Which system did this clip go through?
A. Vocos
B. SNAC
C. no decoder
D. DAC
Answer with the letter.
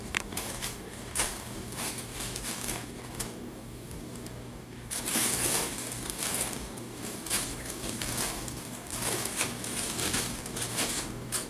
D